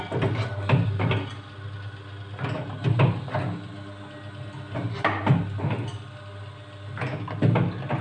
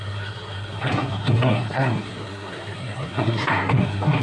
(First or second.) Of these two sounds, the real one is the first